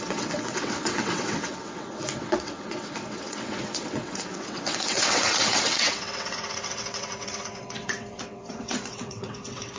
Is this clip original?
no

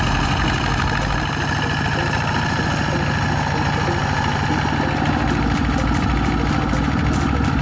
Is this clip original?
yes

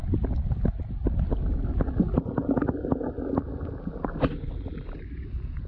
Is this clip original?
yes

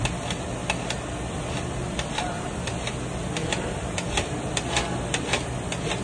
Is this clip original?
yes